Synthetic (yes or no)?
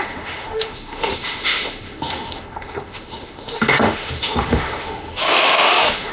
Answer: yes